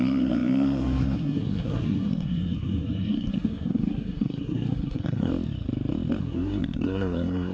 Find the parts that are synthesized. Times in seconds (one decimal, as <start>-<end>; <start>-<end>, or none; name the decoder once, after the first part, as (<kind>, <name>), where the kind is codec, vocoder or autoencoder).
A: 0.0-5.3 (codec, SNAC); 6.2-7.5